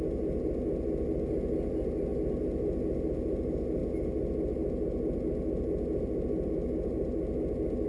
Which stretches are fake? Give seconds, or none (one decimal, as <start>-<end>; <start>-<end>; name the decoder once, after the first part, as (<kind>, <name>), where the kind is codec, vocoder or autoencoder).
none